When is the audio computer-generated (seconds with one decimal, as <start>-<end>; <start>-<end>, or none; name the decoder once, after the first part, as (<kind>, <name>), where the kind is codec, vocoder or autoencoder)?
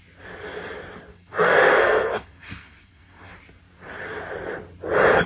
1.1-3.3 (codec, SNAC)